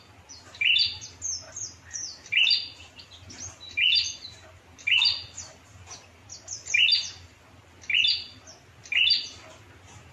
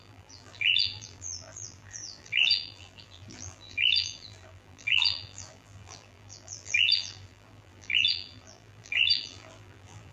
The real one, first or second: first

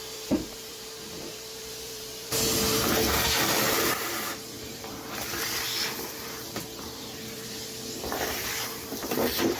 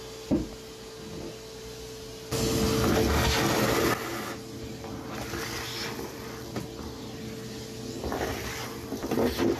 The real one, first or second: second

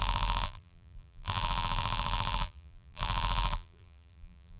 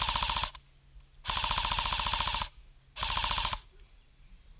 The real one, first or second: second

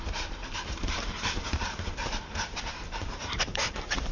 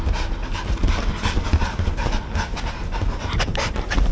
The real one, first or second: second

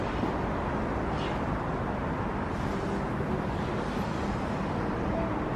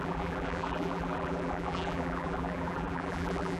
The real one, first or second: first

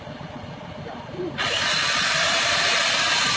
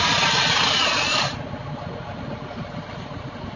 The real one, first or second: second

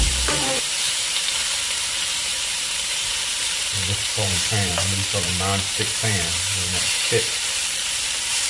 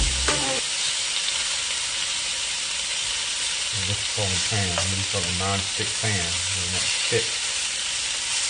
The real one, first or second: second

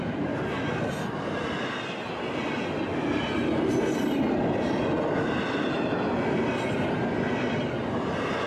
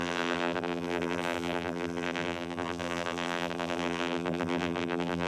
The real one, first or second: first